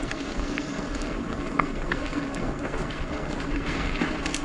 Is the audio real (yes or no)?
no